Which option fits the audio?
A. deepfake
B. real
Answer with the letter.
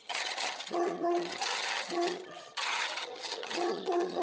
A